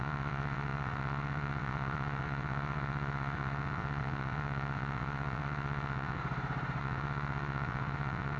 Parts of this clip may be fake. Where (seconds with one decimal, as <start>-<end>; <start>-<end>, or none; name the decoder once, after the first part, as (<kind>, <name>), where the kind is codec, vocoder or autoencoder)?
0.0-6.2 (vocoder, WaveNeXt); 6.8-8.4